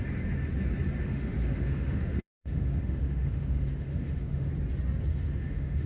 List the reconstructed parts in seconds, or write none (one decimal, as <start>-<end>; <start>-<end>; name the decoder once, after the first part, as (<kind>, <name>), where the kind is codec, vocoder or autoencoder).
1.0-4.5 (autoencoder, DAC-VAE); 5.1-5.9